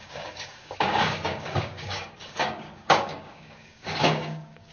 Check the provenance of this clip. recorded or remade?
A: remade